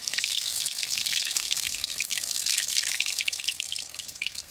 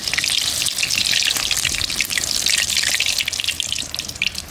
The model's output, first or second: first